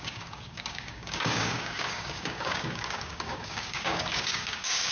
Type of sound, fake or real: fake